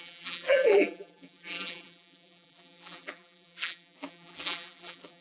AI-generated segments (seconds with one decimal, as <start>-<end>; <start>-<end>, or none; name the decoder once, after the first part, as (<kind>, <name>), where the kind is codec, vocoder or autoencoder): 0.0-5.2 (vocoder, BigVGAN v2)